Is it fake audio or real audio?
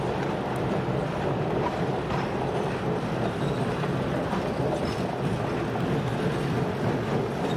real